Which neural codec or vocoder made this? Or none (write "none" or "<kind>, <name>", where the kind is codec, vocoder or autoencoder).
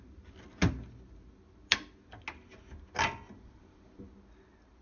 none